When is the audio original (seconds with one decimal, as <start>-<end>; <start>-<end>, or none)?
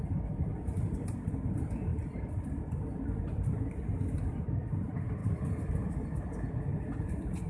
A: 0.0-7.5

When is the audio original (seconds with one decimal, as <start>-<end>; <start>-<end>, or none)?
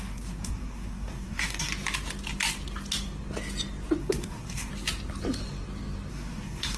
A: 1.7-4.0; 4.7-6.1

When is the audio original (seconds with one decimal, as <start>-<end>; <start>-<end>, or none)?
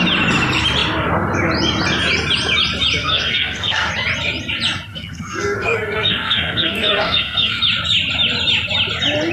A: 0.0-3.0; 3.9-4.9; 7.6-9.3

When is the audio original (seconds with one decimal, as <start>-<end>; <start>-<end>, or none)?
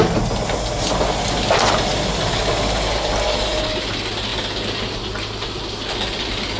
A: 0.0-6.6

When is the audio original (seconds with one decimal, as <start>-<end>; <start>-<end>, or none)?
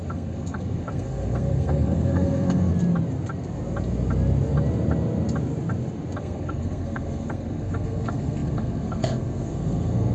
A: 2.7-6.2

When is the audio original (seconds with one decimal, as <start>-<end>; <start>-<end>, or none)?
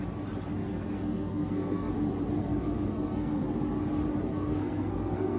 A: 0.0-0.6; 1.9-2.4; 3.4-4.3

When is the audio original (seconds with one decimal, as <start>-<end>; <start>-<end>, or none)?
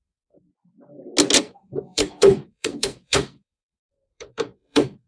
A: 0.5-1.4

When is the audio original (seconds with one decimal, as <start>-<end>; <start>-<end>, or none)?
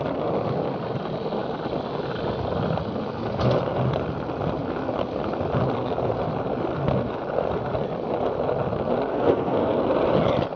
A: 0.0-9.1; 9.8-10.6